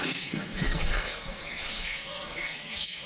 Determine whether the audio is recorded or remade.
remade